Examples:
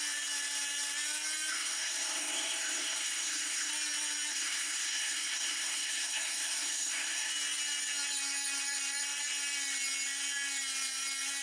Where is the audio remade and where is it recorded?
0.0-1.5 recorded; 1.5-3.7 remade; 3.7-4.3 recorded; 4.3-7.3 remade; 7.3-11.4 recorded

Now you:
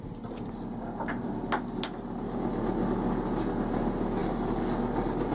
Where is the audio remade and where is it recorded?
0.0-5.3 recorded